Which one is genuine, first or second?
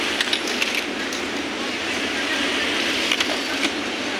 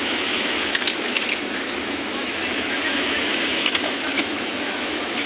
first